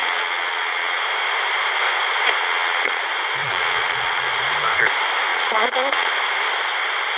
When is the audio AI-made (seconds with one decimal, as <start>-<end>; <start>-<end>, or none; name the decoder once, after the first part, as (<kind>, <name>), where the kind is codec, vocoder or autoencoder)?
0.0-1.0 (vocoder, Vocos); 2.4-3.0; 3.4-4.3; 5.3-6.1